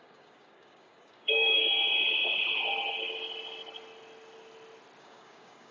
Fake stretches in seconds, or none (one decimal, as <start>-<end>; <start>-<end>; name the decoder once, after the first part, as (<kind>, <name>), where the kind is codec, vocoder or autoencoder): 0.0-1.6 (codec, DAC); 5.0-5.7